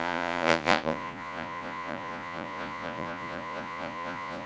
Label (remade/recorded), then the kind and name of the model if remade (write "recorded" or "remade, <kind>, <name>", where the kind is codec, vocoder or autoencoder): remade, vocoder, Vocos